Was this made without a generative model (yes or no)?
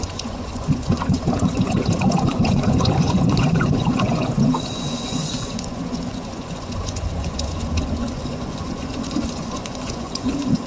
no